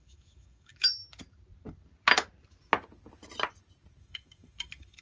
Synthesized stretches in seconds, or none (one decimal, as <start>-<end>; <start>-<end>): 0.0-1.0; 4.0-5.0